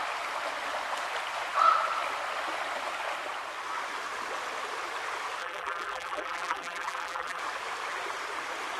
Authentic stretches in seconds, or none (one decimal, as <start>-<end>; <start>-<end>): 0.0-5.4; 7.4-8.8